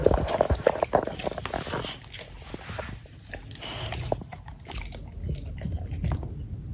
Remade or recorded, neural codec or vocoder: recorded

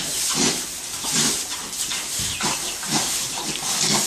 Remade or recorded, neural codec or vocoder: recorded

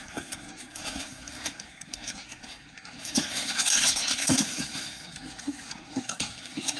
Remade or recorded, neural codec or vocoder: remade, codec, SNAC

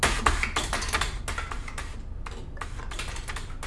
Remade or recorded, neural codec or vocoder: recorded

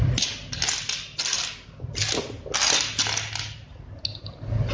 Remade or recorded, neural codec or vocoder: recorded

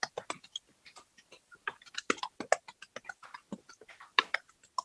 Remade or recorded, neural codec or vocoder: recorded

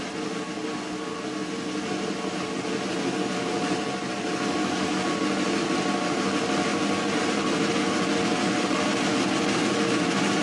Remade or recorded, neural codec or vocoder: recorded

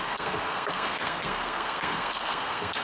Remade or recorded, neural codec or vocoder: remade, codec, SNAC